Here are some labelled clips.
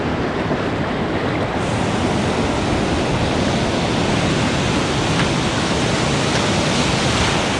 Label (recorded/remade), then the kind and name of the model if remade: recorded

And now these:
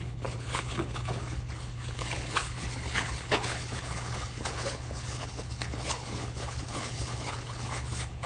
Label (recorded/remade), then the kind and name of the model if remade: remade, codec, HILCodec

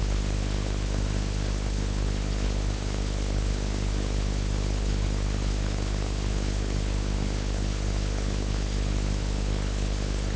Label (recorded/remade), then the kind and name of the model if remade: remade, codec, HILCodec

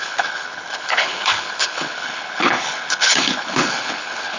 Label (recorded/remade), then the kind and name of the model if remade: remade, codec, HILCodec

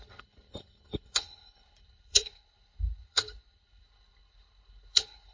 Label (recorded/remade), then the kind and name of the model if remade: remade, codec, HILCodec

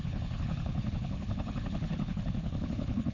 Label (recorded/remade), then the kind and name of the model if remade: remade, codec, HILCodec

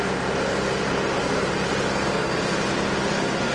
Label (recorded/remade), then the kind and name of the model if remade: recorded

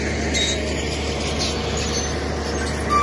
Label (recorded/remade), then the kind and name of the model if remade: recorded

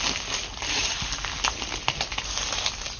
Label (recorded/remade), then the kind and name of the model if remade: recorded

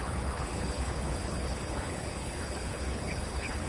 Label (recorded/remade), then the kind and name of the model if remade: remade, codec, HILCodec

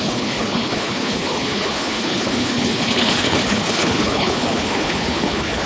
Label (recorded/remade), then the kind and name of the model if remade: remade, codec, HILCodec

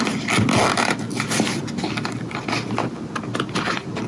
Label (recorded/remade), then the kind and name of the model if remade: recorded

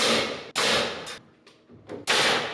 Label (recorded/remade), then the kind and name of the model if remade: recorded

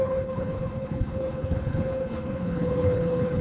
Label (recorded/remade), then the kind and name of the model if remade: remade, codec, HILCodec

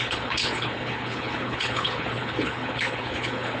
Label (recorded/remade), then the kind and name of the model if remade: remade, codec, HILCodec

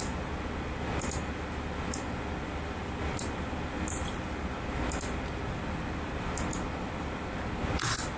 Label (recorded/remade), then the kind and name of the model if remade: recorded